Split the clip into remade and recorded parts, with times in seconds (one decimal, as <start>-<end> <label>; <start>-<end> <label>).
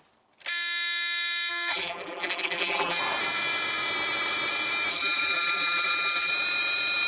0.0-1.5 recorded; 1.5-3.0 remade; 3.0-4.9 recorded; 4.9-6.3 remade; 6.3-7.1 recorded